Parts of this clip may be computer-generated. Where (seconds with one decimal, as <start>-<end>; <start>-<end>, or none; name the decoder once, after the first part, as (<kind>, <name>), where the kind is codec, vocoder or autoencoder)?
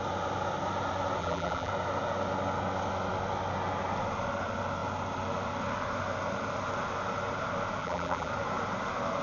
1.2-1.7 (vocoder, BigVGAN v2); 7.8-8.3